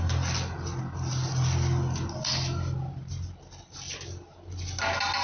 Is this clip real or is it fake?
real